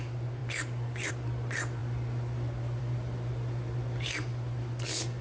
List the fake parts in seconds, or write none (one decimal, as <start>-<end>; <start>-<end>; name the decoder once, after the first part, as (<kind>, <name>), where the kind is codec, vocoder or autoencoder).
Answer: none

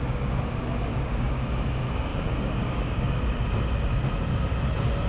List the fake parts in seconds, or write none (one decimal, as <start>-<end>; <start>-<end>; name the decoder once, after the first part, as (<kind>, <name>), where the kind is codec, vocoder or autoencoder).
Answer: 0.9-1.5 (codec, DAC); 2.1-3.1

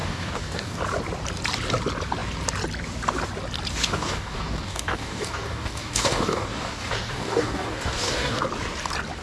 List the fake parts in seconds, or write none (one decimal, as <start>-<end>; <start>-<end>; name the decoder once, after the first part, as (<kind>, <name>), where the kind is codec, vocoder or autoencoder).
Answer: 0.0-0.8 (codec, DAC); 3.7-8.4

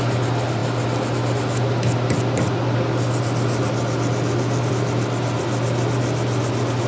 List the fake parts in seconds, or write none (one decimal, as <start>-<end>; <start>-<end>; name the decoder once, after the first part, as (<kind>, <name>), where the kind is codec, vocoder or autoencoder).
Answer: none

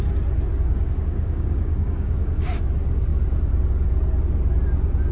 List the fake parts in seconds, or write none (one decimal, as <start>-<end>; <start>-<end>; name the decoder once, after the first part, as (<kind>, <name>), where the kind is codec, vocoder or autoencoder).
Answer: 0.5-2.6 (codec, DAC)

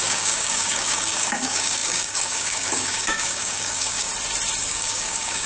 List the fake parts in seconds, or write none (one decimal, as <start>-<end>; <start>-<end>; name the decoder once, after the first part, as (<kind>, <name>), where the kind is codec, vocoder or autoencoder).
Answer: 0.0-4.1 (codec, DAC); 4.6-5.5